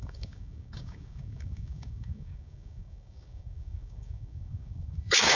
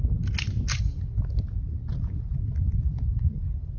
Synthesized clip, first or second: first